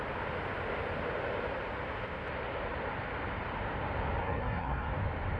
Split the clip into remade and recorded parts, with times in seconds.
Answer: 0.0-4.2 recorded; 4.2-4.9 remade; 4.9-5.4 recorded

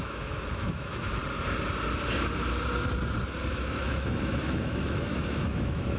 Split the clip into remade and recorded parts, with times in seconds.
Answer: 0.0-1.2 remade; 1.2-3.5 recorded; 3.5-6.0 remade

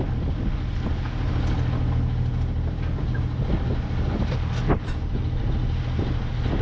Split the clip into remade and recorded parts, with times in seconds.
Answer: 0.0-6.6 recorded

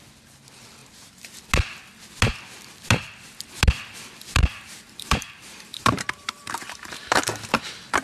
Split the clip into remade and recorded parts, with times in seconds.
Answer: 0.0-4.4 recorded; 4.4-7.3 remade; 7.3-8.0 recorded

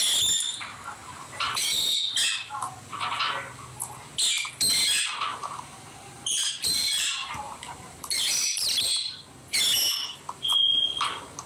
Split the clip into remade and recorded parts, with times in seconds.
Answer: 0.0-1.0 recorded; 1.0-2.0 remade; 2.0-5.3 recorded; 5.3-8.9 remade; 8.9-11.5 recorded

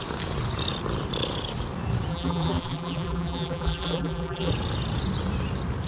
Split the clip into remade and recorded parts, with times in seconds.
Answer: 0.0-2.1 recorded; 2.1-4.5 remade; 4.5-5.9 recorded